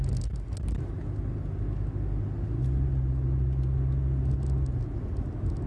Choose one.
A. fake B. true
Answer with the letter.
B